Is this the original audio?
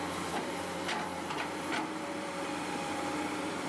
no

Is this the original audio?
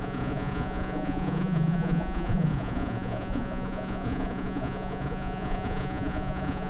no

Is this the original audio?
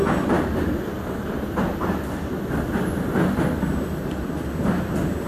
yes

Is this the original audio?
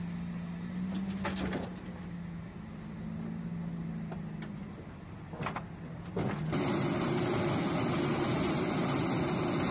yes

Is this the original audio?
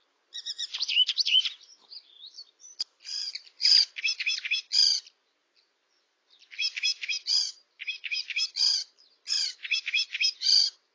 no